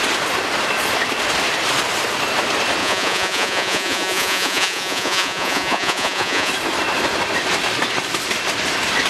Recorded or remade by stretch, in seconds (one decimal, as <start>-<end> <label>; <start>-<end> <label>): 0.0-2.8 recorded; 2.8-6.5 remade; 6.5-9.1 recorded